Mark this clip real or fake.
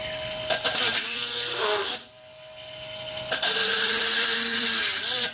fake